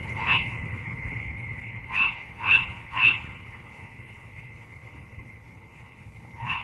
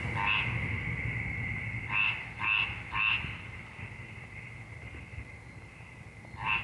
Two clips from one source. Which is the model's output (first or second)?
first